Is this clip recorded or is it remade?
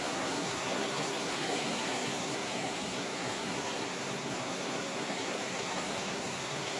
remade